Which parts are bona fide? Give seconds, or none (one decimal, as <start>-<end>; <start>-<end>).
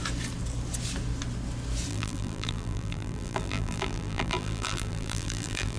0.0-1.9